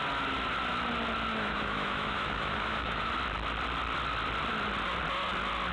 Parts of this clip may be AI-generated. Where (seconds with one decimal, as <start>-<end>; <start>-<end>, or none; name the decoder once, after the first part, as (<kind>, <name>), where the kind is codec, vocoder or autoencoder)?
1.3-3.1 (autoencoder, DAC-VAE)